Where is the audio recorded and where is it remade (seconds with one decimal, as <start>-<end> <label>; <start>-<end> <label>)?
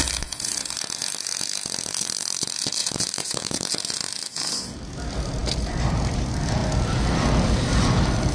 0.0-2.8 recorded; 2.8-3.7 remade; 3.7-8.3 recorded